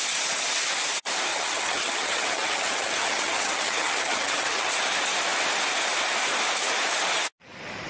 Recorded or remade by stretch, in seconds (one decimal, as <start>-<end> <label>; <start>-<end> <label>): 0.0-1.3 recorded; 1.3-4.7 remade; 4.7-7.9 recorded